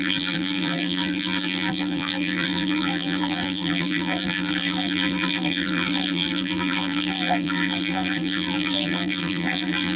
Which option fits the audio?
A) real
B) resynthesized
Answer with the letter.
B